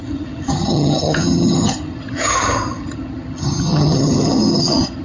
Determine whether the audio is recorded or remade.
remade